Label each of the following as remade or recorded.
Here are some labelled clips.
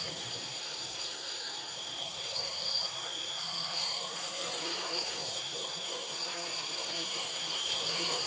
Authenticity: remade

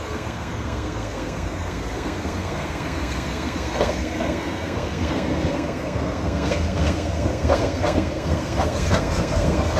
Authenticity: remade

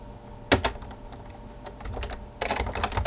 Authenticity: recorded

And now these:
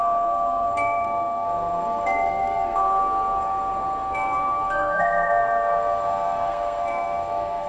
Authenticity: remade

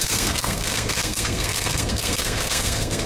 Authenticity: remade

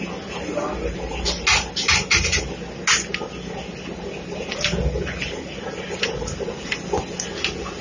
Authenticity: recorded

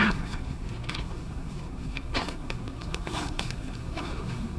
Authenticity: remade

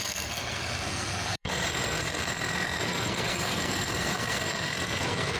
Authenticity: remade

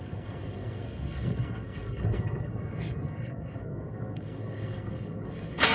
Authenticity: remade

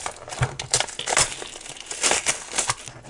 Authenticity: recorded